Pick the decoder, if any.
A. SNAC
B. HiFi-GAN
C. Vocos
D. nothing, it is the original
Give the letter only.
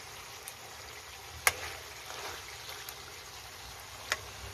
D